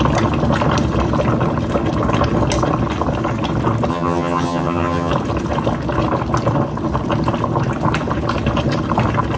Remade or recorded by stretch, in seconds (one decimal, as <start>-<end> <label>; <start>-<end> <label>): 0.0-3.9 recorded; 3.9-5.1 remade; 5.1-9.4 recorded